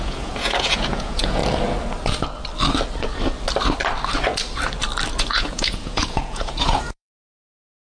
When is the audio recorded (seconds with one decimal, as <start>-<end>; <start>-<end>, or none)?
1.4-5.2